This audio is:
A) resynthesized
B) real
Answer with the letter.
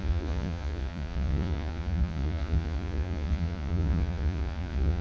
A